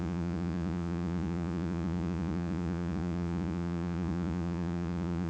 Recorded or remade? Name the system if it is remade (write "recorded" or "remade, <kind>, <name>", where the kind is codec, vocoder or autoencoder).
remade, vocoder, Vocos